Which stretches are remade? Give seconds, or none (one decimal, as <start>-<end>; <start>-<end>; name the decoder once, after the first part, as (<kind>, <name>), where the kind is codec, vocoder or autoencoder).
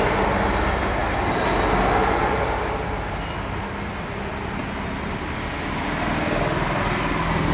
none